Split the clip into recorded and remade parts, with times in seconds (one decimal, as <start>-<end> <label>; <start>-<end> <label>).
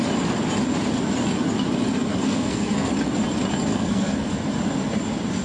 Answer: 0.0-2.1 recorded; 2.1-2.9 remade; 2.9-3.7 recorded; 3.7-4.3 remade; 4.3-5.4 recorded